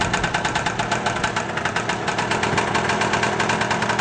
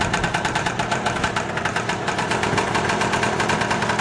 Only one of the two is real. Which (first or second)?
first